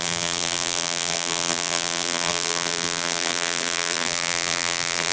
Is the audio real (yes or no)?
no